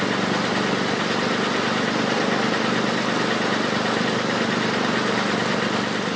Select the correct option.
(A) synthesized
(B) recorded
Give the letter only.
B